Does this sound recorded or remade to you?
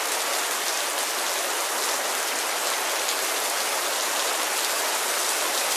recorded